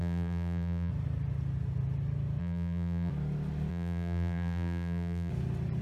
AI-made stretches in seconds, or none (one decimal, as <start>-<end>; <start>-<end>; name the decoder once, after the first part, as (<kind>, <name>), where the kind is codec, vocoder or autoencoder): 0.0-0.9 (vocoder, BigVGAN v2); 2.4-3.1; 3.7-5.3